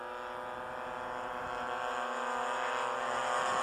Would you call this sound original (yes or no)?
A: yes